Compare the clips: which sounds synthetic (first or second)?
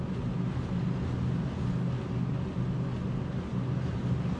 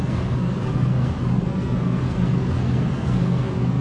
second